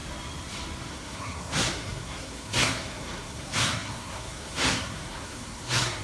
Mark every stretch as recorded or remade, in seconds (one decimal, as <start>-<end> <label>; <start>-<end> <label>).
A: 0.0-0.9 recorded; 0.9-6.0 remade